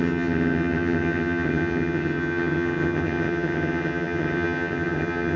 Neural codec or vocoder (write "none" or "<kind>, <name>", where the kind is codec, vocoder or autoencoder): vocoder, HiFi-GAN